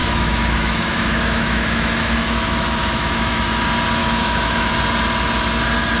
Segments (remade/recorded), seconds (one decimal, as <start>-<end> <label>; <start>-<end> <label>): 0.0-3.6 remade; 3.6-4.0 recorded; 4.0-4.7 remade; 4.7-6.0 recorded